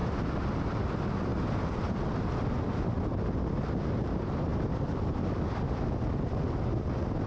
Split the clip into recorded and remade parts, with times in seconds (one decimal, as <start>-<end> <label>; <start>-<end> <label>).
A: 0.0-7.3 recorded